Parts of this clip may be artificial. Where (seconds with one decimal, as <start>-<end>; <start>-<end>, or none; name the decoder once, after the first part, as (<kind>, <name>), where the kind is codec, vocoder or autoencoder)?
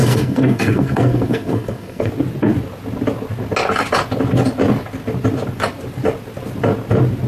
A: 0.0-2.1 (codec, SNAC)